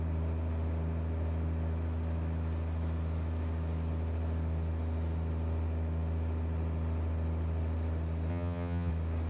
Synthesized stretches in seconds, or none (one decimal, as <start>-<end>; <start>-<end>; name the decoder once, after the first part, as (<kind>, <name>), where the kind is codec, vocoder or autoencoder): 8.3-8.9 (vocoder, HiFi-GAN)